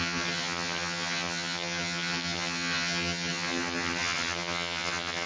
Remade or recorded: remade